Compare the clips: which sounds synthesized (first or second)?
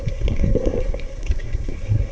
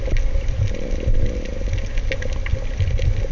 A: first